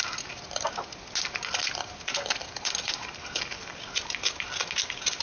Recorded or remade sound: recorded